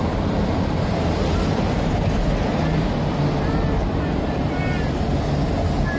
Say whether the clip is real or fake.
real